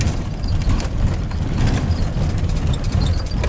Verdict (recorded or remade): recorded